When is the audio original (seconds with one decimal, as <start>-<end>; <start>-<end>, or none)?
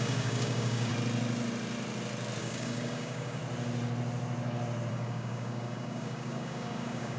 0.9-2.4; 3.4-4.9